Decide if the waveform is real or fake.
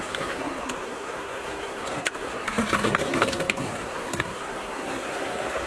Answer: fake